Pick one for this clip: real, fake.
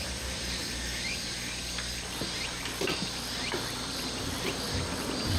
fake